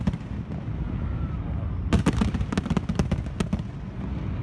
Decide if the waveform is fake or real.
real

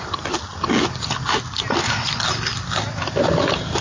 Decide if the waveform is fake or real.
real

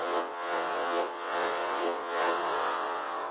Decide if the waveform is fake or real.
fake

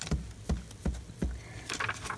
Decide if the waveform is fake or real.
real